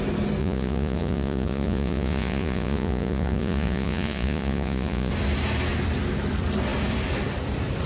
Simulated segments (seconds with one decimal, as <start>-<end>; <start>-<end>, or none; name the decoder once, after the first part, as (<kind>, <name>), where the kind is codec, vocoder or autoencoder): 0.4-5.1 (vocoder, Vocos)